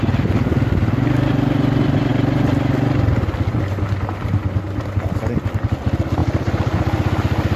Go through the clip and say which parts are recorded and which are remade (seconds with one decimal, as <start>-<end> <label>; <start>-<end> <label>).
0.0-7.6 recorded